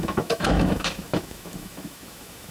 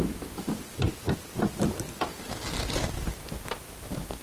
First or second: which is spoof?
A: first